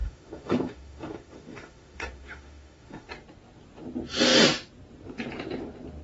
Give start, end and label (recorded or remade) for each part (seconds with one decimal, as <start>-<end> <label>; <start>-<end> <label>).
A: 0.0-3.1 remade; 3.1-6.0 recorded